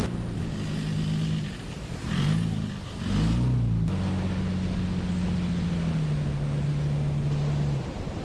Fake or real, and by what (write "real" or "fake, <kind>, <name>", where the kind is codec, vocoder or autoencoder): real